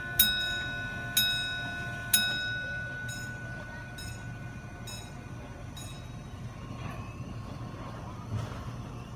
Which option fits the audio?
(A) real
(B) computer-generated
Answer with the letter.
A